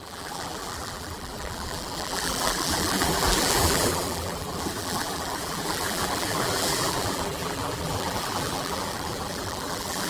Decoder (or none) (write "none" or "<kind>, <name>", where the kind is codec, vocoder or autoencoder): vocoder, BigVGAN v2